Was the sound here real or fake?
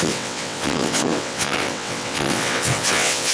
fake